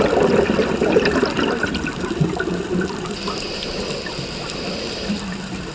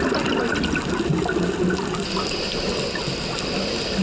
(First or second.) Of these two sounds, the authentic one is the second